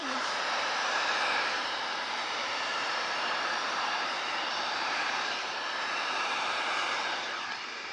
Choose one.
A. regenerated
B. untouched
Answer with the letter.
A